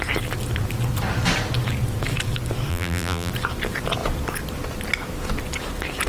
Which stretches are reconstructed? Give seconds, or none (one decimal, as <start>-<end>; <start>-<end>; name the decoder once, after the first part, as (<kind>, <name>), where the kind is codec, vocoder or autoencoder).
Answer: 2.7-3.3 (vocoder, BigVGAN v2)